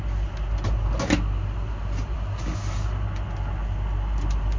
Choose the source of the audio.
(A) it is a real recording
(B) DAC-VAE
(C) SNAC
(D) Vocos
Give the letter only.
A